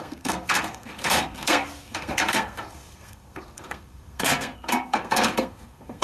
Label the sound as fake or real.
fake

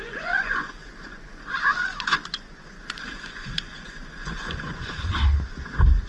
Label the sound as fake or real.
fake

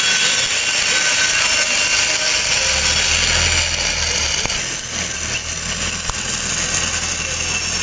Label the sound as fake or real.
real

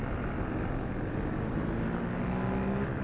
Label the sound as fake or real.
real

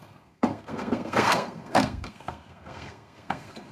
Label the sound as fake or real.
fake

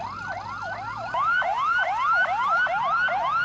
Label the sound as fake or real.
real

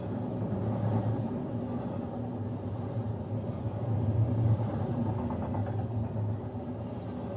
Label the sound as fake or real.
real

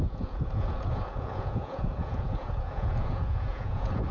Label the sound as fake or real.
fake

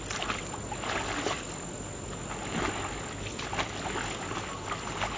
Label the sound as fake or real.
real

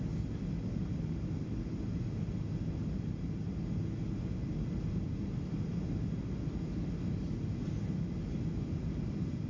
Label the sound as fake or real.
real